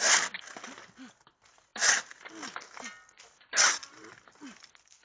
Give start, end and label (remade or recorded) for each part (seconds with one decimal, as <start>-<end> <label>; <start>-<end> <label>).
0.0-5.0 recorded